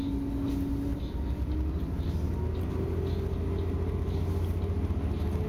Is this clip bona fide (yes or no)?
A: yes